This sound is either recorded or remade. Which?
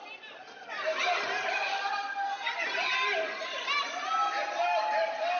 recorded